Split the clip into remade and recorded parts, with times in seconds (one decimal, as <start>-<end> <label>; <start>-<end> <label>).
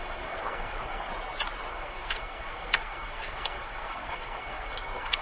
0.0-1.1 remade; 1.1-1.7 recorded; 1.7-5.2 remade